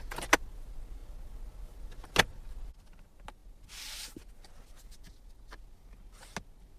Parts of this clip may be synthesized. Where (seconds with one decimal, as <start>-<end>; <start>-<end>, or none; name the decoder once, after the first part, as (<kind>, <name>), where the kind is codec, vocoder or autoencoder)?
none